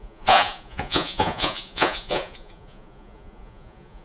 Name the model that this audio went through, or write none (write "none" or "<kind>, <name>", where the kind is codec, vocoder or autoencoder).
vocoder, Vocos